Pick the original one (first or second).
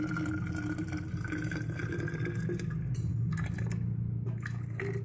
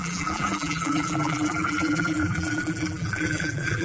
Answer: first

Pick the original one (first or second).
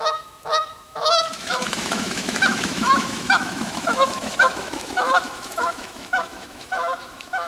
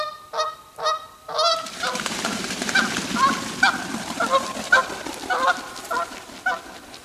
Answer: second